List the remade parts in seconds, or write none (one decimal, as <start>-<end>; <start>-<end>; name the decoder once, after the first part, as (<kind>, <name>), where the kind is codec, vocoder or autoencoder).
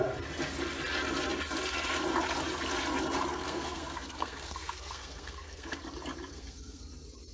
3.3-5.8 (codec, SNAC); 6.3-6.8